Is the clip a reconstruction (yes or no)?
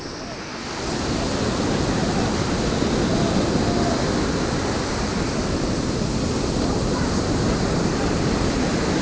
no